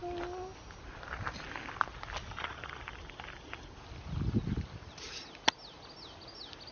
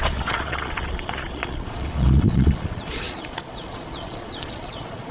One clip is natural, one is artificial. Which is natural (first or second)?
first